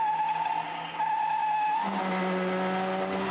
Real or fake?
real